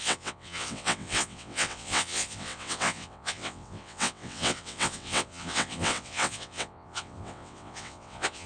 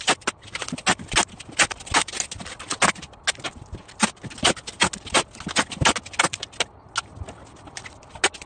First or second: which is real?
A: second